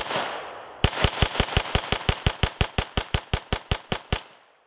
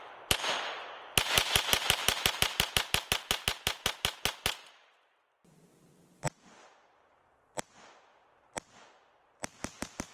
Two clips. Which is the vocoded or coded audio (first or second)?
first